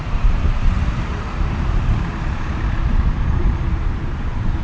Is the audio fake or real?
fake